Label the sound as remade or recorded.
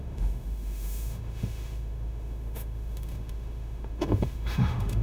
remade